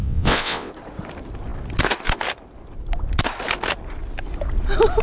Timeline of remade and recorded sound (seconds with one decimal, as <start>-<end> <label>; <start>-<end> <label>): 0.0-0.7 remade; 0.7-5.0 recorded